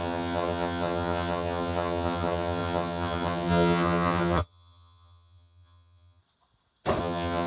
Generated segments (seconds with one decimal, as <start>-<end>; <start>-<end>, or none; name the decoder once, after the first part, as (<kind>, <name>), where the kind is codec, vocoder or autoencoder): 0.0-6.2 (vocoder, HiFi-GAN); 7.0-7.5